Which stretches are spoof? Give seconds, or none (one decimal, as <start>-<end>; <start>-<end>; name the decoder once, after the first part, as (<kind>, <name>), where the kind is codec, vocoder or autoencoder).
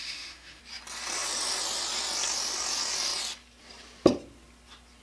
0.0-0.6 (autoencoder, DAC-VAE)